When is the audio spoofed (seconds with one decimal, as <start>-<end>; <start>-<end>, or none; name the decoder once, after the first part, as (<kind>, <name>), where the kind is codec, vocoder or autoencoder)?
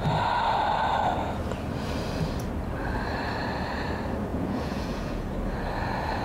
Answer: 4.3-5.3 (vocoder, Vocos)